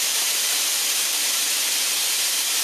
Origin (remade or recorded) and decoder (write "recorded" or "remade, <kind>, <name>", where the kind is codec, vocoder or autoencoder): remade, vocoder, BigVGAN v2